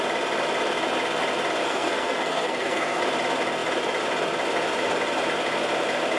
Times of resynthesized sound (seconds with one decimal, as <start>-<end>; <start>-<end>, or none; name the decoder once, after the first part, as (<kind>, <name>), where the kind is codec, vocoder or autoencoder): 1.6-3.0 (codec, SNAC)